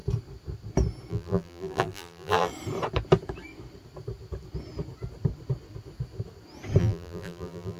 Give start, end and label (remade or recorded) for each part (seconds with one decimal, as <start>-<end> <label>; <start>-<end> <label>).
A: 0.0-1.1 recorded; 1.1-2.5 remade; 2.5-6.8 recorded; 6.8-7.8 remade

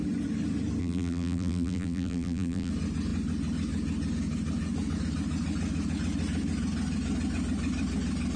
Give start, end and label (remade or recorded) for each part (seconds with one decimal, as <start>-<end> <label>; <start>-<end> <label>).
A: 0.0-0.8 recorded; 0.8-2.7 remade; 2.7-8.4 recorded